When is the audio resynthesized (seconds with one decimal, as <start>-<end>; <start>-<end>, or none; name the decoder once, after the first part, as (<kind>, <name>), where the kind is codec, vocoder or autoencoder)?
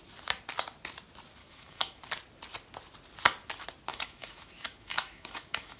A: 1.4-2.0 (autoencoder, DAC-VAE); 3.9-5.8